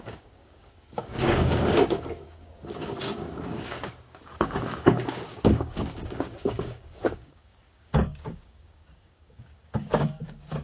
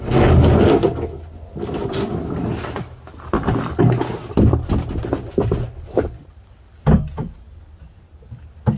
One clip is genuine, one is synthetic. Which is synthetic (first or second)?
first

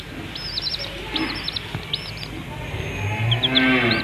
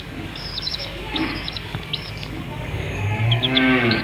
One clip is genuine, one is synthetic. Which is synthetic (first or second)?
second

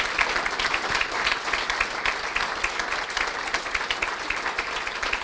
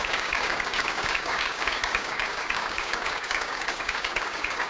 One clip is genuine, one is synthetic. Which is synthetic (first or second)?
second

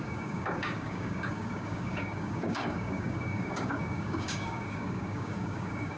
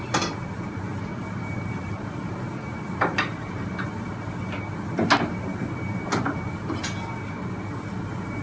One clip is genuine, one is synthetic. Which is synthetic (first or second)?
first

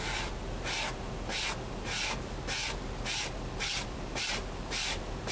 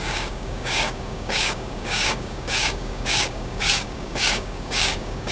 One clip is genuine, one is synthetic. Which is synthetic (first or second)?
second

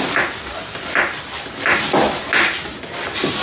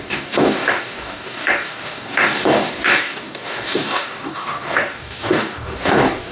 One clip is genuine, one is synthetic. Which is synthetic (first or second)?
second